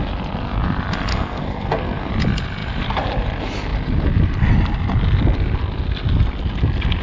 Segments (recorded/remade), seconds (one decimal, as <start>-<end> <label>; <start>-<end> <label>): 0.0-1.1 recorded; 1.1-2.1 remade; 2.1-7.0 recorded